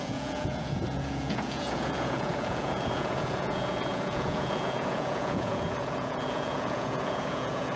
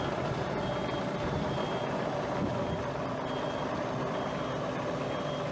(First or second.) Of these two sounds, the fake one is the first